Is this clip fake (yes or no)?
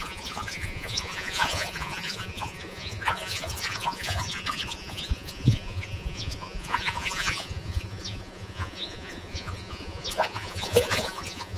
yes